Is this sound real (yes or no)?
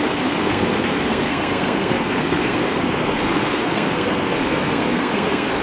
no